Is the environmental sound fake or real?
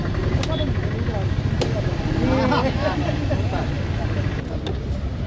real